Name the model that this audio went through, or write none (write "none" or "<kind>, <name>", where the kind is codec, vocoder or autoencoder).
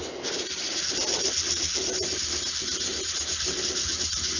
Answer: vocoder, BigVGAN v2